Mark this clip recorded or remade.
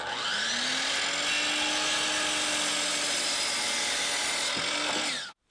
recorded